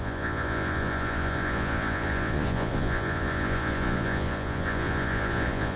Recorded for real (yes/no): no